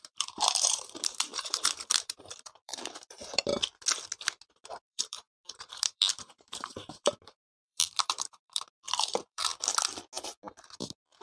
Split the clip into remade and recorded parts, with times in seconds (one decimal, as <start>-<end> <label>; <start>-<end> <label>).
0.0-3.5 remade; 3.5-4.5 recorded; 4.5-9.5 remade; 9.5-11.2 recorded